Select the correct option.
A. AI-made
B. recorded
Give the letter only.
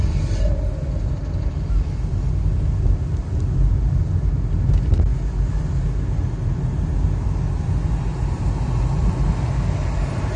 B